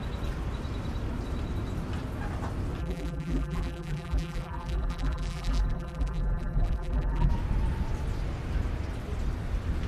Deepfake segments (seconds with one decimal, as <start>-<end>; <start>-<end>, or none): 2.8-7.3